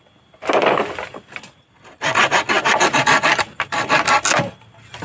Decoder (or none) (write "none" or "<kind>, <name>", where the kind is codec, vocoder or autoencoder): none